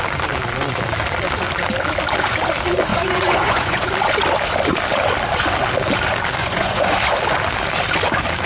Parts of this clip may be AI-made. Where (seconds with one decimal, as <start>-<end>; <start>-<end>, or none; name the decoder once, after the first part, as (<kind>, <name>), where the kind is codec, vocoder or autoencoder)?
2.9-3.9 (vocoder, Vocos); 6.4-7.0